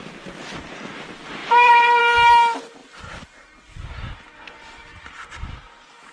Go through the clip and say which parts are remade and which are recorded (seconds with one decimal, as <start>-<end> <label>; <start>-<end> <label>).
0.0-1.4 recorded; 1.4-2.0 remade; 2.0-6.1 recorded